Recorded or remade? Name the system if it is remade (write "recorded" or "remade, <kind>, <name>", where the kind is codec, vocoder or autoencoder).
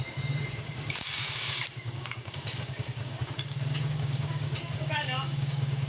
remade, codec, DAC